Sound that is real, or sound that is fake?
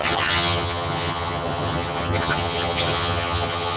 fake